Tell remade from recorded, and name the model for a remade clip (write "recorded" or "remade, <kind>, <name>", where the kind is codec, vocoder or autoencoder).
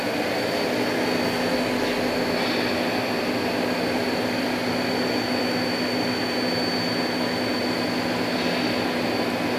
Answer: recorded